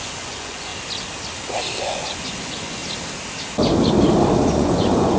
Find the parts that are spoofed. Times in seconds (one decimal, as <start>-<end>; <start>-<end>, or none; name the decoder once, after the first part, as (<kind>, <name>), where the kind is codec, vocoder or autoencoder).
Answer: 0.0-0.7 (vocoder, Vocos); 1.8-2.8; 4.5-5.2